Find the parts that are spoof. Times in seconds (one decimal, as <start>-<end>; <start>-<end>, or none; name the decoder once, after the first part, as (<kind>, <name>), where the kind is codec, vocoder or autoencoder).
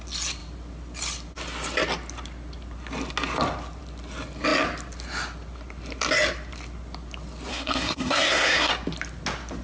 7.5-8.7 (codec, SNAC)